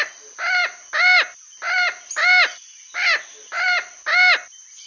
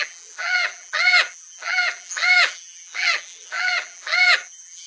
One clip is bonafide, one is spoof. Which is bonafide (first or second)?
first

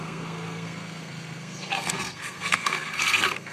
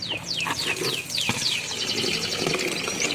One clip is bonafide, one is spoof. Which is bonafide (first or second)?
second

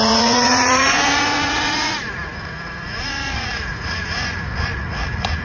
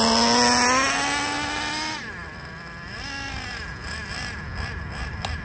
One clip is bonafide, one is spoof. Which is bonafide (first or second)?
second